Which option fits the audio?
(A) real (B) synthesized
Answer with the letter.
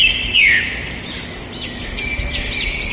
A